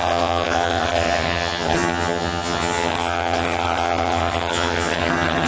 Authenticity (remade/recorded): remade